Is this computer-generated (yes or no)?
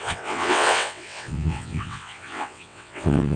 yes